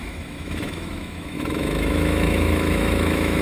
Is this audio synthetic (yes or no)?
yes